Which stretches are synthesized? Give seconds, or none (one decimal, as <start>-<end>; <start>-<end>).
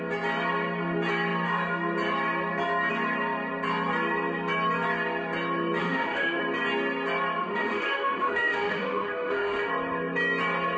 5.8-6.4; 7.4-9.7